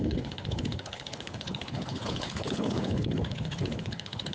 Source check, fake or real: fake